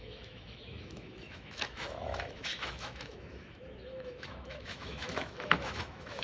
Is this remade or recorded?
remade